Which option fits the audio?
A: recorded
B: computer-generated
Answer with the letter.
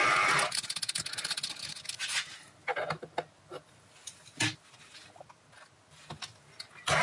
A